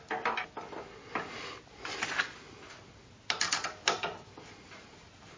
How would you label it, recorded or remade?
recorded